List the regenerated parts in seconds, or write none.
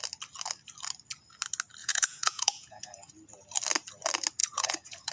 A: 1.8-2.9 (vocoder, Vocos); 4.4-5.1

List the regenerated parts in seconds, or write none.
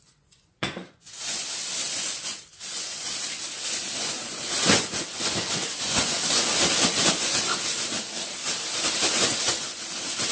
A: 0.0-3.1 (vocoder, Vocos); 4.0-7.5; 9.1-10.3